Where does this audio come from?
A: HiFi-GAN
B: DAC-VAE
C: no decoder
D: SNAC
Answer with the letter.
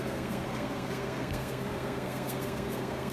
D